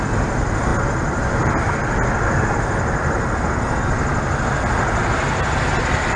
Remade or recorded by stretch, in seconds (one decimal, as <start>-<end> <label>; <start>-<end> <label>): 0.0-6.2 recorded